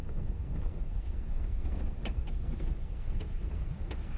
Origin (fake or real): fake